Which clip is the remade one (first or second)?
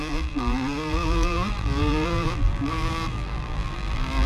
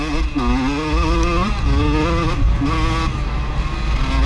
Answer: first